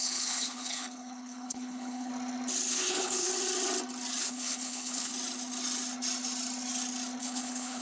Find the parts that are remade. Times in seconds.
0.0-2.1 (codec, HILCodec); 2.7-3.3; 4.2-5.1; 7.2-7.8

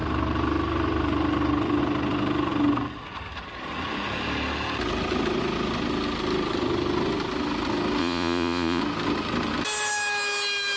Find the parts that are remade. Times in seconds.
8.0-8.8 (vocoder, Vocos)

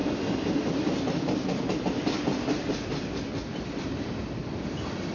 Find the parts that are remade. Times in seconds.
none